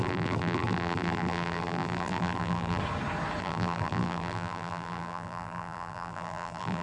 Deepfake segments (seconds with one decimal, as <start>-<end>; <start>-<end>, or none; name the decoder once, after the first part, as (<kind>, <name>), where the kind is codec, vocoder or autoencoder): 0.0-2.8 (vocoder, BigVGAN v2); 3.4-6.8

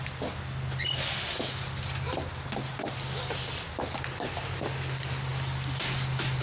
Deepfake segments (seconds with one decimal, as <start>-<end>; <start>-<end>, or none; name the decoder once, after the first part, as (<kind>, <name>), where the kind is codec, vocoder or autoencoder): none

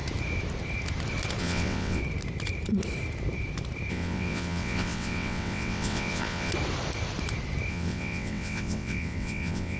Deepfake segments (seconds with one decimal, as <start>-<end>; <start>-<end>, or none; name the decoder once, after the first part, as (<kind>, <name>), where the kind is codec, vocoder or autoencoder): 1.4-2.0 (vocoder, WaveNeXt); 3.9-6.5; 7.7-9.8

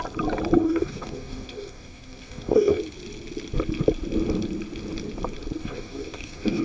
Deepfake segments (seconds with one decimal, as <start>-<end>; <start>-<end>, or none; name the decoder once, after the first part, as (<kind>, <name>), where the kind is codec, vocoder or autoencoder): 0.6-2.8 (codec, DAC); 5.6-6.6

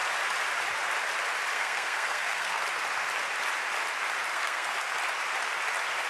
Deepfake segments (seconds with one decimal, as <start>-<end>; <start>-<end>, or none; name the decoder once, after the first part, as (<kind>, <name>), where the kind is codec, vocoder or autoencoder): 1.5-2.6 (codec, SNAC); 4.3-4.9

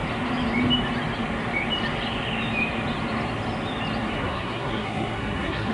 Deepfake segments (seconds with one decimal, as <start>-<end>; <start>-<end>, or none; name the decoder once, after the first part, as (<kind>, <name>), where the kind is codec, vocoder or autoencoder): 4.1-5.7 (codec, SNAC)

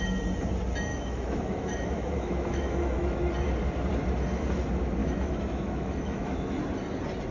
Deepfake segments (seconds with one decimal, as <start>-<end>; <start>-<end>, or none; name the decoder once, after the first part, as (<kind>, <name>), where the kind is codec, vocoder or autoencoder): 0.9-3.3 (autoencoder, DAC-VAE); 5.0-6.6

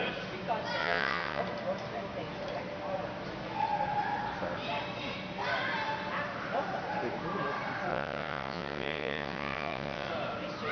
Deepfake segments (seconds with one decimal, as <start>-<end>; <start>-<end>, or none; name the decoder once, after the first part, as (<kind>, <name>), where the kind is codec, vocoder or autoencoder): 0.8-1.4 (vocoder, WaveNeXt); 7.9-10.1